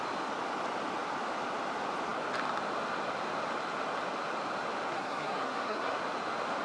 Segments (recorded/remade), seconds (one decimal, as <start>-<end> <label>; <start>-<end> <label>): 0.0-4.9 recorded; 4.9-6.0 remade; 6.0-6.6 recorded